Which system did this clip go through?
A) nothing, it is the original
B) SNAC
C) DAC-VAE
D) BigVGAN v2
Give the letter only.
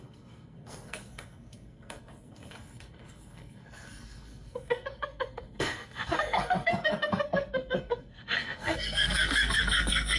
B